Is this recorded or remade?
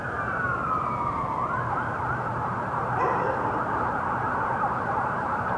remade